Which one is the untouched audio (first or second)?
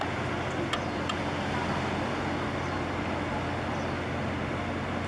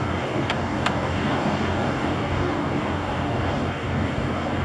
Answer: first